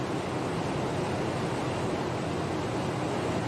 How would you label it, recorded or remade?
recorded